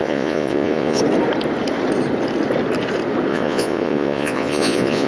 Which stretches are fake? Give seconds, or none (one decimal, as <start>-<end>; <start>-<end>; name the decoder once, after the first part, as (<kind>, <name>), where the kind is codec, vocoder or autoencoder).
0.0-1.0 (vocoder, Vocos); 3.3-5.1